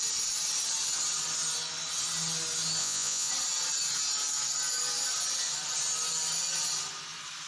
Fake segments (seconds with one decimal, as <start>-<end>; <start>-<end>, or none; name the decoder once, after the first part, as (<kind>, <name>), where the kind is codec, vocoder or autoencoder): 2.8-3.3 (vocoder, Vocos)